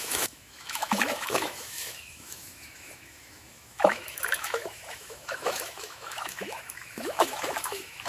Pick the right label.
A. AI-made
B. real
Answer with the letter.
A